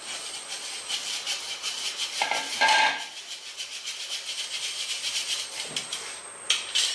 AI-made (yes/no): no